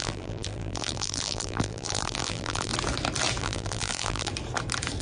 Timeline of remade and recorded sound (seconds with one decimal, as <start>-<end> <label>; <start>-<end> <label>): 0.0-2.7 remade; 2.7-3.4 recorded; 3.4-4.3 remade; 4.3-5.0 recorded